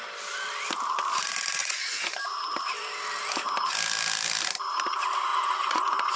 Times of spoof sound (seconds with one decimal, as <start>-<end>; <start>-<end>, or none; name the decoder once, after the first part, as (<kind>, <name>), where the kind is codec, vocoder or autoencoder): 1.6-2.2 (vocoder, Vocos); 5.3-6.2